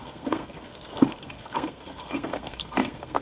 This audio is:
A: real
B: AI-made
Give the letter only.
B